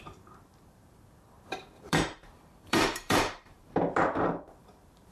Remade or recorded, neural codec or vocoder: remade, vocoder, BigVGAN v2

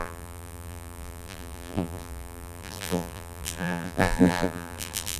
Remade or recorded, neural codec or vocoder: remade, vocoder, BigVGAN v2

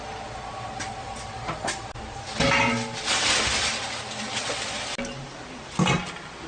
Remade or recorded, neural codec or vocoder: recorded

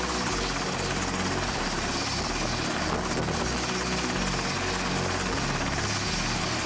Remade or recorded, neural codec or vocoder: recorded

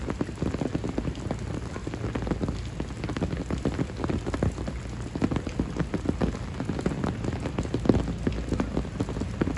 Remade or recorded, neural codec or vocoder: recorded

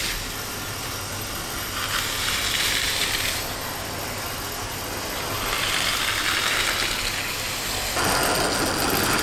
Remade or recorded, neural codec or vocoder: recorded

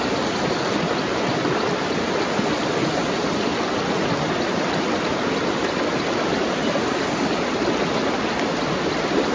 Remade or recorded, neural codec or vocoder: remade, vocoder, BigVGAN v2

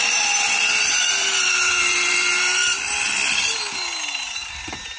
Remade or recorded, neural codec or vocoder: remade, vocoder, BigVGAN v2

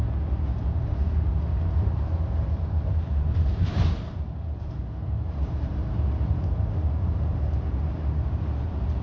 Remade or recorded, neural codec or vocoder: remade, vocoder, BigVGAN v2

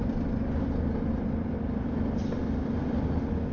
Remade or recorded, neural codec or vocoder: remade, vocoder, BigVGAN v2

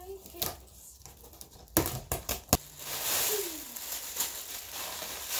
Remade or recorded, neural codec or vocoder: recorded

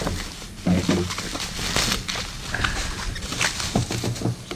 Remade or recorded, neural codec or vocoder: recorded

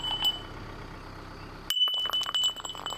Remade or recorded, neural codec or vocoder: recorded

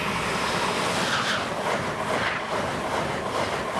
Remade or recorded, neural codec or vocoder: recorded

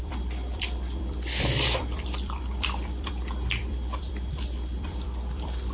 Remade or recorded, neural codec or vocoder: remade, vocoder, BigVGAN v2